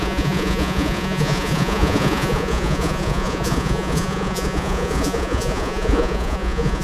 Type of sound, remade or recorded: remade